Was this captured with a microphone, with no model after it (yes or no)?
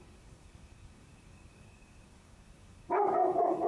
no